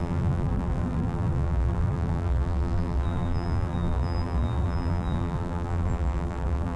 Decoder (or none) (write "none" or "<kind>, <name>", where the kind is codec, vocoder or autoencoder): vocoder, BigVGAN v2